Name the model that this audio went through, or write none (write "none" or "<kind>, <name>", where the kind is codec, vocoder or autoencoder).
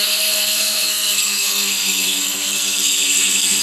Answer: codec, SNAC